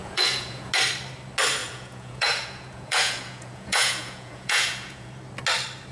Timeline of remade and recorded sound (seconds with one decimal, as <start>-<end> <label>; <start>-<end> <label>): 0.0-0.7 remade; 0.7-1.6 recorded; 1.6-5.1 remade; 5.1-5.9 recorded